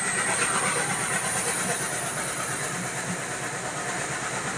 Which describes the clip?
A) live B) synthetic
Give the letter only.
A